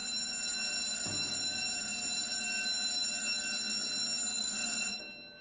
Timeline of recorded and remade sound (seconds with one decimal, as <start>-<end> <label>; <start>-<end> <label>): 0.0-4.3 recorded; 4.3-5.0 remade; 5.0-5.4 recorded